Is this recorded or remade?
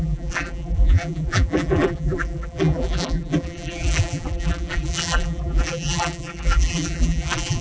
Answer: remade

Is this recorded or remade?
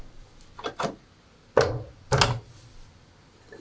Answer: recorded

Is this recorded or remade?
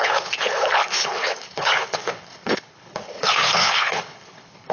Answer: remade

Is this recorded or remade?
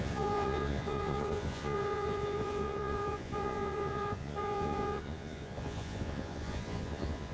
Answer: remade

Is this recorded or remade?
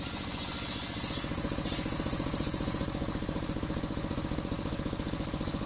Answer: remade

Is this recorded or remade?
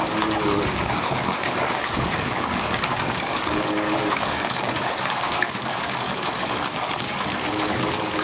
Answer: remade